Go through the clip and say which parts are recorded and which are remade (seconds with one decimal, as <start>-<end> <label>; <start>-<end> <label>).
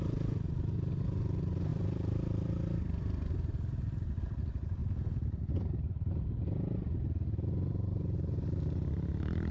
0.0-4.8 recorded; 4.8-6.1 remade; 6.1-9.5 recorded